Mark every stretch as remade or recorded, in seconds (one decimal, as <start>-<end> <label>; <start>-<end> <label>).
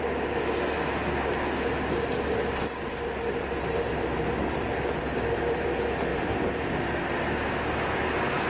0.0-6.1 recorded; 6.1-7.5 remade; 7.5-8.5 recorded